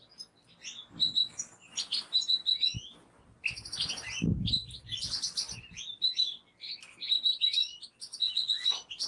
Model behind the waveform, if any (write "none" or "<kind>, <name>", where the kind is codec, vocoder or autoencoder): none